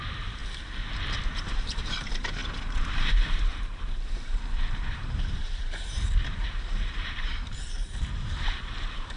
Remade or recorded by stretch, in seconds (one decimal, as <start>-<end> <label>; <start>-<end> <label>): 0.0-0.4 remade; 0.4-1.5 recorded; 1.5-2.4 remade; 2.4-3.1 recorded; 3.1-9.2 remade